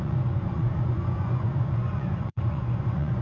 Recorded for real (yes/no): no